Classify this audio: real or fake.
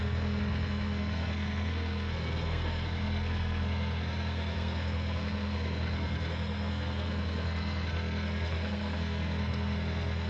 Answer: fake